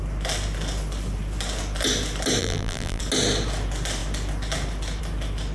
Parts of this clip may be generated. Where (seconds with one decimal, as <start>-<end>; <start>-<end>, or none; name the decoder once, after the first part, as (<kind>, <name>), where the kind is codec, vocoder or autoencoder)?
2.4-3.0 (vocoder, BigVGAN v2)